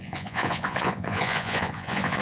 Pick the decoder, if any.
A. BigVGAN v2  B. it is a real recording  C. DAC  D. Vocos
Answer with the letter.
D